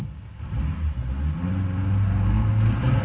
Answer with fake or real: real